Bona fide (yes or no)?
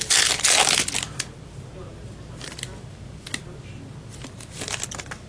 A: yes